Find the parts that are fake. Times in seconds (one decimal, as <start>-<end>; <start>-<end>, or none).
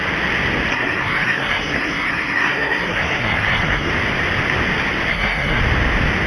0.7-3.9; 5.1-5.6